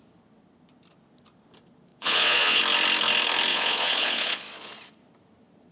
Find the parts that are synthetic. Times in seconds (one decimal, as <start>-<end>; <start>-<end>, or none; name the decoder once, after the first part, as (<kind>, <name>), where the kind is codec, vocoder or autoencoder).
1.9-2.6 (vocoder, Vocos); 3.5-4.7